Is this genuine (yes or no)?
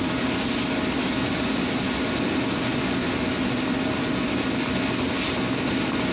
yes